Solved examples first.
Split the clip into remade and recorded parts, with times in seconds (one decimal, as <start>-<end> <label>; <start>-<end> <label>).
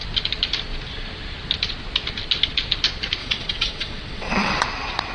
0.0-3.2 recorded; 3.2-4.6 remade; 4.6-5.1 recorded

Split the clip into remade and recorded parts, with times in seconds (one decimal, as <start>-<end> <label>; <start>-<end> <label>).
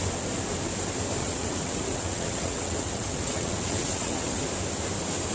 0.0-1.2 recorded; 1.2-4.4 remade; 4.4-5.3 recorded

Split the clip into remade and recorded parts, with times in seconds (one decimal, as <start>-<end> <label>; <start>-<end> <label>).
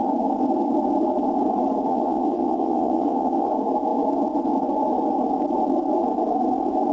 0.0-1.9 recorded; 1.9-3.5 remade; 3.5-6.9 recorded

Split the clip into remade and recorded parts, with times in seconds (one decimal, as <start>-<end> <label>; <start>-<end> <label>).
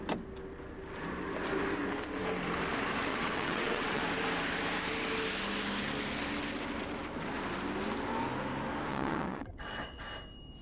0.0-3.1 recorded; 3.1-4.0 remade; 4.0-8.9 recorded; 8.9-10.0 remade; 10.0-10.6 recorded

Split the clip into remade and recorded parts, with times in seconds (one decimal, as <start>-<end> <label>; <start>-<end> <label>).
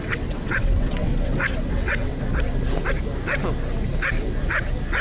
0.0-1.1 remade; 1.1-1.7 recorded; 1.7-2.1 remade; 2.1-5.0 recorded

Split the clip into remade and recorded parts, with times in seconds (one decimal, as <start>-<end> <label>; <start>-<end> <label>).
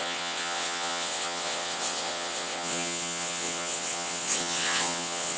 0.0-5.4 remade